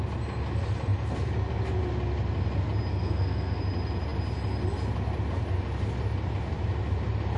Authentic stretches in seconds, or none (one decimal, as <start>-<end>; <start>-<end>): 0.0-2.9; 3.6-7.4